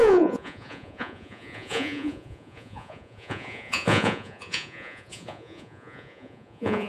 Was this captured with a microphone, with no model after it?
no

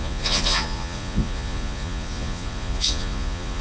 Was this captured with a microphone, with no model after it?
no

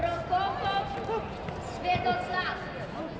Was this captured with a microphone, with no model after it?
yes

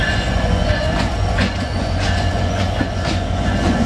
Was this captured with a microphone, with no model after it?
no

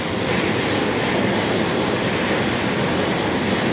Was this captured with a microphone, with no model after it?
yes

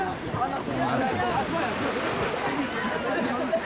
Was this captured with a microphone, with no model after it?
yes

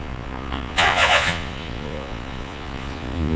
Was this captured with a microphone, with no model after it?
no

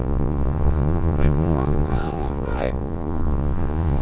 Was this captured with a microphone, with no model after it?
no